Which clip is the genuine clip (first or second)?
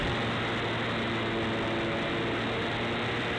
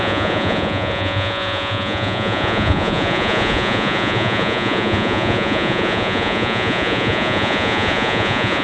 first